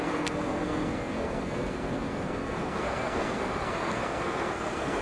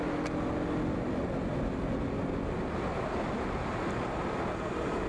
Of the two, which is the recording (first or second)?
second